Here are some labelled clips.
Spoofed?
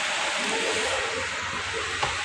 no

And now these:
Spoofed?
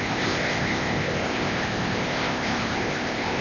yes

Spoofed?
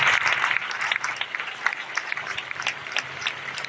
no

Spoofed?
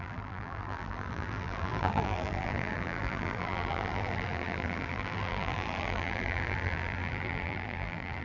yes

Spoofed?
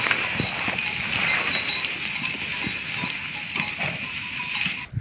no